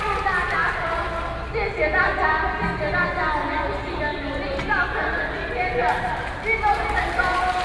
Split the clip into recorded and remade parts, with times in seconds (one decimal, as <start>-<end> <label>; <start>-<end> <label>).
0.0-0.4 recorded; 0.4-1.0 remade; 1.0-5.8 recorded; 5.8-7.6 remade